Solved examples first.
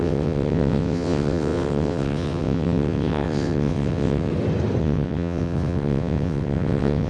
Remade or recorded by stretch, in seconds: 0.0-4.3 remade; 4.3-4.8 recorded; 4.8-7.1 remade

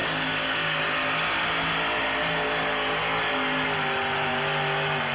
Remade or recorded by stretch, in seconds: 0.0-0.8 remade; 0.8-5.1 recorded

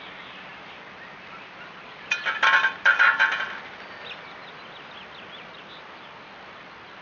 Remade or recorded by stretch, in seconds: 0.0-7.0 recorded

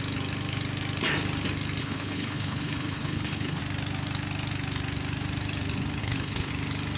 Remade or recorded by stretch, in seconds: 0.0-1.8 recorded; 1.8-3.6 remade; 3.6-6.0 recorded; 6.0-6.5 remade; 6.5-7.0 recorded